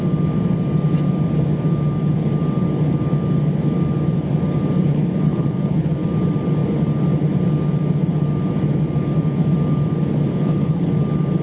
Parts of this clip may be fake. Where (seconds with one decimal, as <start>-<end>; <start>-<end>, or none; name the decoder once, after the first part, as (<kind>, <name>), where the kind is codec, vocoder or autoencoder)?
4.8-5.9 (codec, HILCodec); 10.3-10.9